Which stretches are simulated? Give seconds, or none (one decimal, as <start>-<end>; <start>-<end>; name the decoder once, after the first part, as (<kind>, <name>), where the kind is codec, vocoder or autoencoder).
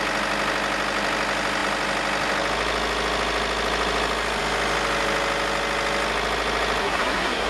6.8-7.5 (codec, SNAC)